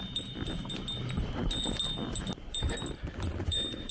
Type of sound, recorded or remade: remade